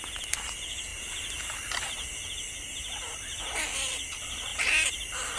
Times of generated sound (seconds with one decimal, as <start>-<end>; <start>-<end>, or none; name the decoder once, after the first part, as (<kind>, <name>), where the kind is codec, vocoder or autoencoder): none